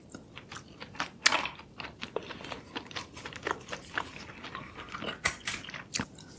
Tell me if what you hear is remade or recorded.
recorded